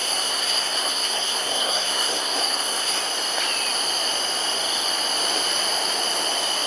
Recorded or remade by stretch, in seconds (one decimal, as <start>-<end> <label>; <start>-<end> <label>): 0.0-3.0 remade; 3.0-6.7 recorded